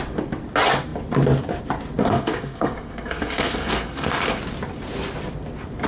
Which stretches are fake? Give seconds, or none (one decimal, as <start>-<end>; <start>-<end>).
2.0-4.4